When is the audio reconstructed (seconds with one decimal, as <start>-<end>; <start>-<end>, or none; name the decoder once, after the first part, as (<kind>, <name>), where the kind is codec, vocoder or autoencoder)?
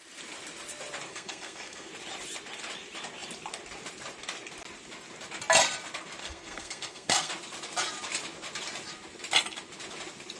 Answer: 1.1-1.9 (codec, SNAC); 6.2-7.3